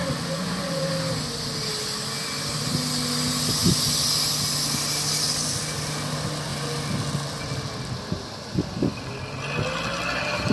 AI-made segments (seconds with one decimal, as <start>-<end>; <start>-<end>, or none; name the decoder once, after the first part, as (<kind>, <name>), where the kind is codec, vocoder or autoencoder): 0.0-0.9 (vocoder, Vocos)